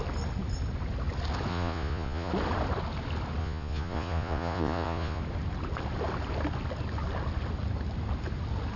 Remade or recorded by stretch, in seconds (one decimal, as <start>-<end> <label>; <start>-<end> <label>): 0.0-1.5 recorded; 1.5-2.3 remade; 2.3-3.4 recorded; 3.4-5.2 remade; 5.2-8.8 recorded